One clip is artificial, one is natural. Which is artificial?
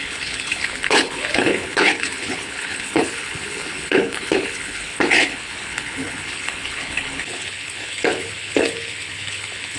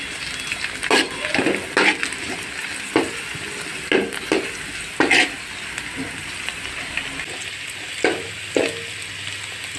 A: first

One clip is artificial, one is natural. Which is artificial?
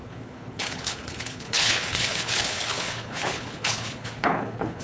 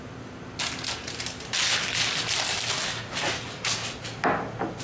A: first